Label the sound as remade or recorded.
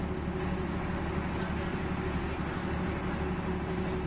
recorded